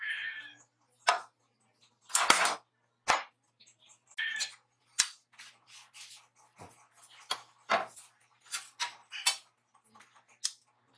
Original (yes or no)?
yes